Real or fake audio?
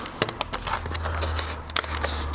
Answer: real